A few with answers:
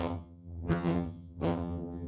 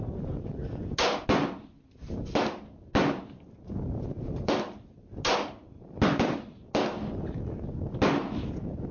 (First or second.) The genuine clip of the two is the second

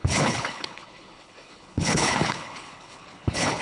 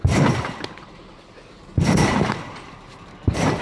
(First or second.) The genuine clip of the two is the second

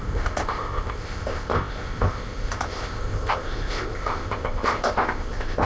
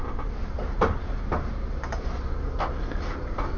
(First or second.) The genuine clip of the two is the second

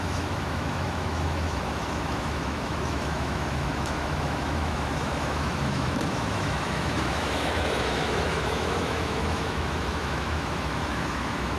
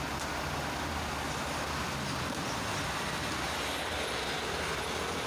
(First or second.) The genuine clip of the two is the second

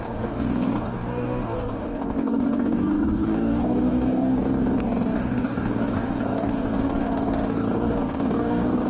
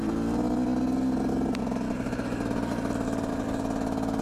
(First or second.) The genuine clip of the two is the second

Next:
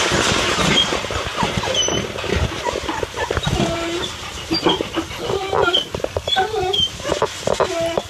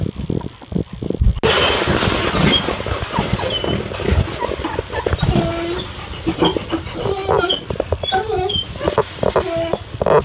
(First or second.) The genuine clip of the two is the second